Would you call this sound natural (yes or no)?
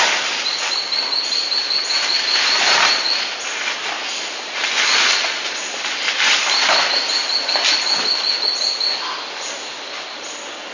yes